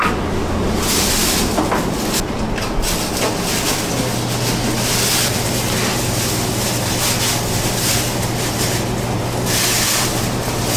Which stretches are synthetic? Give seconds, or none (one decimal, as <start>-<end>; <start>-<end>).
none